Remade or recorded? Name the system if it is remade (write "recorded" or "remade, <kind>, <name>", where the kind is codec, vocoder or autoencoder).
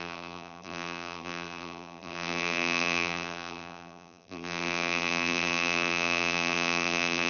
remade, vocoder, BigVGAN v2